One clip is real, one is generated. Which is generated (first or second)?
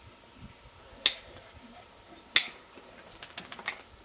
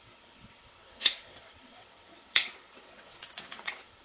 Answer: second